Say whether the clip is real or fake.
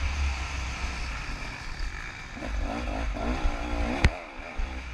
real